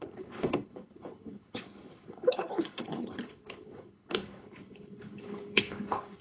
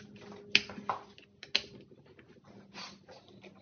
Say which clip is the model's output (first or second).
first